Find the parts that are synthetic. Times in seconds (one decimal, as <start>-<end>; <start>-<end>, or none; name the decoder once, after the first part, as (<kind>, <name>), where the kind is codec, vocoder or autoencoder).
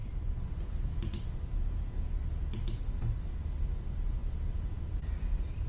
none